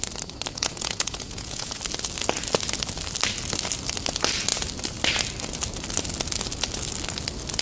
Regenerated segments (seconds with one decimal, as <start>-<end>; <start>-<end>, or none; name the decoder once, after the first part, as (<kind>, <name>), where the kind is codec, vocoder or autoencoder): 0.5-1.8 (vocoder, Vocos)